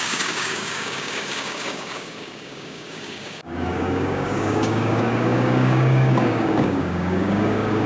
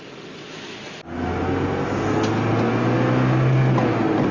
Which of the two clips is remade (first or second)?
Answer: first